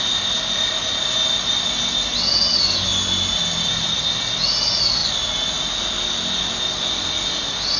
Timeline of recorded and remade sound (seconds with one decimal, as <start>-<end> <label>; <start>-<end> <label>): 0.0-7.8 recorded